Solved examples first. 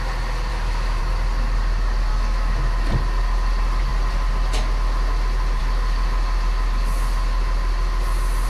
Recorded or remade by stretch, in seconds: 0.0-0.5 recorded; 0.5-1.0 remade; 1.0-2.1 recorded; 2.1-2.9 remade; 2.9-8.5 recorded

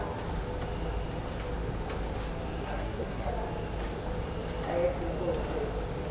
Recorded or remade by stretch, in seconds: 0.0-2.6 recorded; 2.6-3.3 remade; 3.3-6.1 recorded

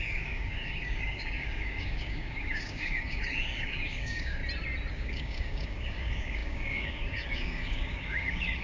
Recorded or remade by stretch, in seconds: 0.0-4.4 remade; 4.4-4.9 recorded; 4.9-8.6 remade

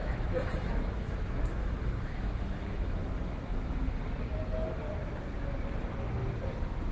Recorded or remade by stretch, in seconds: 0.0-4.1 remade; 4.1-6.9 recorded

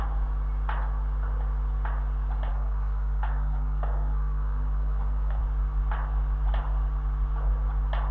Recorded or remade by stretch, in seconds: 0.0-2.5 recorded; 2.5-5.4 remade; 5.4-8.1 recorded

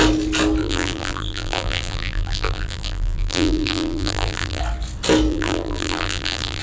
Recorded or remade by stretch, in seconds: 0.0-0.6 recorded; 0.6-4.6 remade; 4.6-5.3 recorded; 5.3-6.6 remade

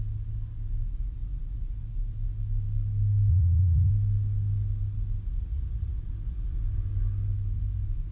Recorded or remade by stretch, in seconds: 0.0-3.3 recorded; 3.3-3.9 remade; 3.9-5.4 recorded; 5.4-6.0 remade; 6.0-8.1 recorded